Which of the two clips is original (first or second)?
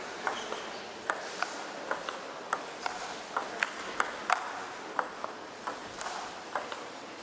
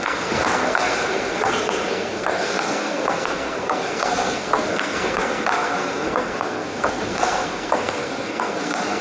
first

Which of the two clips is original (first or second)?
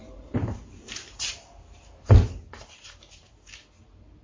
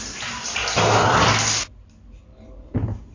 second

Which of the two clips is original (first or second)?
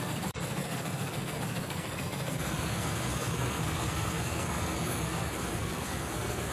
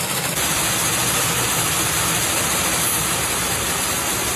second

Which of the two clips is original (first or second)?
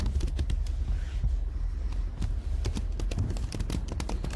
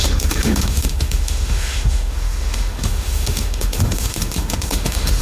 first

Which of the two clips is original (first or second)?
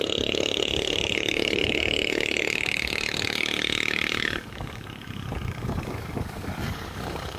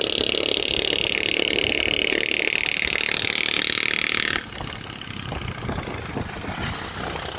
second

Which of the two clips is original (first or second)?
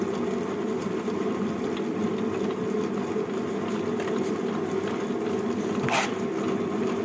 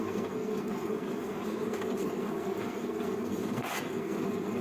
first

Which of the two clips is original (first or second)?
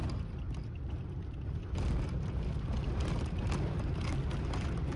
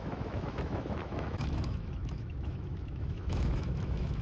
first